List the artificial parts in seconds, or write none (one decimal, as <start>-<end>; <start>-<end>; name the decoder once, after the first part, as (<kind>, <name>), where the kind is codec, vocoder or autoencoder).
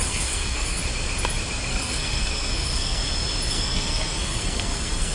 0.0-0.8 (codec, SNAC); 1.7-3.0; 3.5-5.1